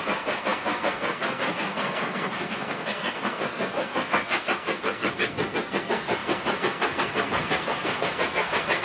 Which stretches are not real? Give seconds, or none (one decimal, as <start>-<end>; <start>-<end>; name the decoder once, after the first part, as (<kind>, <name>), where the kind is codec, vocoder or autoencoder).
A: 0.0-8.8 (codec, SNAC)